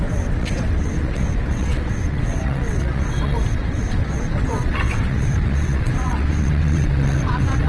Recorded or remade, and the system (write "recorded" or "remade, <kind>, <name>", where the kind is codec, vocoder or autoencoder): remade, vocoder, WaveNeXt